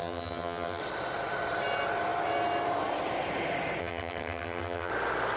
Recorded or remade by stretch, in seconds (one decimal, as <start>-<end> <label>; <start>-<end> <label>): 0.0-0.8 remade; 0.8-3.8 recorded; 3.8-4.9 remade; 4.9-5.4 recorded